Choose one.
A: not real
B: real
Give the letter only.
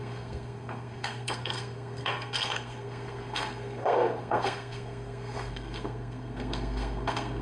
A